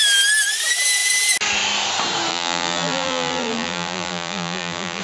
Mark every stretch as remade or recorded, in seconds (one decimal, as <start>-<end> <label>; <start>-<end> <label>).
0.0-2.3 recorded; 2.3-5.0 remade